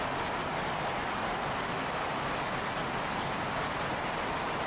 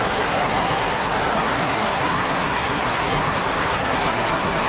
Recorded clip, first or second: first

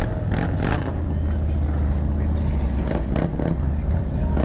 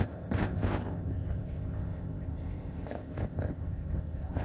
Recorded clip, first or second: first